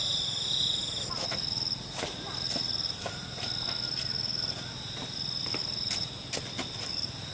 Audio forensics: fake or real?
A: real